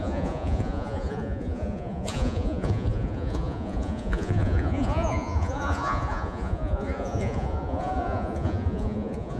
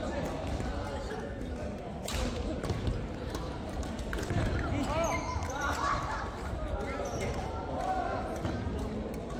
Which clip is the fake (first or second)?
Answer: first